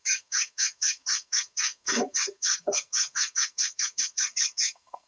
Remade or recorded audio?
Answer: remade